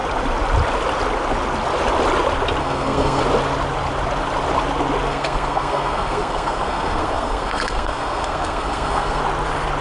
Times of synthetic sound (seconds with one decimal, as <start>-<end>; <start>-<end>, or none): 2.6-3.2; 5.1-9.2